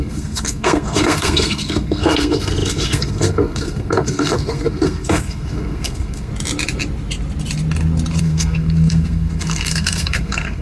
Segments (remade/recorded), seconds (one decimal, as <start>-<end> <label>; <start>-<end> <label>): 0.0-6.3 remade; 6.3-8.2 recorded; 8.2-10.6 remade